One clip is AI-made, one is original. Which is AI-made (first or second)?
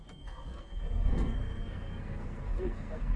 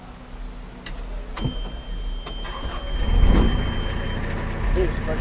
first